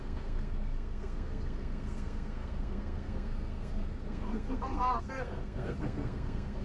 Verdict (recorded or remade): remade